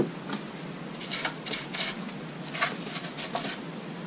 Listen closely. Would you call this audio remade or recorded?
recorded